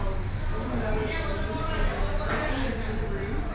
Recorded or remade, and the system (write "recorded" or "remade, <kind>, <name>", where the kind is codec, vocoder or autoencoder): recorded